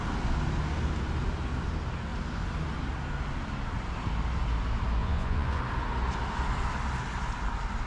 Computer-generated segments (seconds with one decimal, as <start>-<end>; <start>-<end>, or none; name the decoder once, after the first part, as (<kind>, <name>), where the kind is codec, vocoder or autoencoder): 5.0-5.6 (vocoder, Vocos)